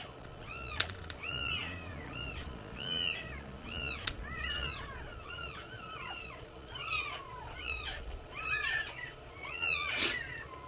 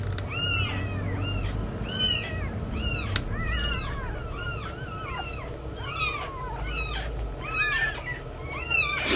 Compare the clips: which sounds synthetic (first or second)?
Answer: first